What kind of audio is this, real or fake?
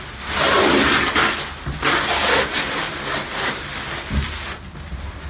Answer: real